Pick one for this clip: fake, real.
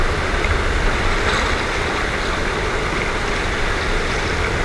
real